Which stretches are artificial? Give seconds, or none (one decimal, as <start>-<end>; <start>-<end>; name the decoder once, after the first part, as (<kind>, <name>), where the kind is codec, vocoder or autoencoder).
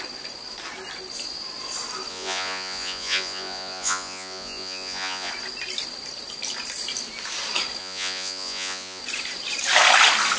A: 2.1-5.3 (vocoder, Vocos); 7.8-9.0